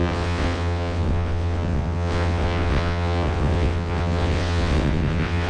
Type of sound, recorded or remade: remade